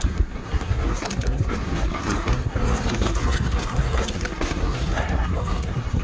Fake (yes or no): yes